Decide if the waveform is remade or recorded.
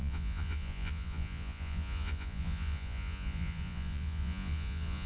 remade